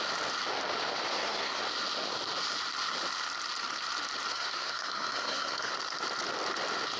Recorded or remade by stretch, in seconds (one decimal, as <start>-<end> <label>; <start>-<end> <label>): 0.0-1.1 recorded; 1.1-1.6 remade; 1.6-4.3 recorded; 4.3-5.7 remade; 5.7-7.0 recorded